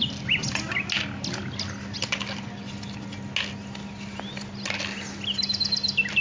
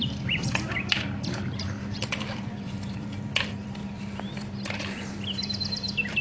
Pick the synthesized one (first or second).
second